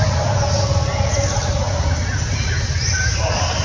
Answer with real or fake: real